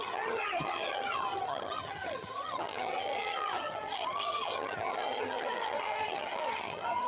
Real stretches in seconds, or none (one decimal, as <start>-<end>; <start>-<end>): none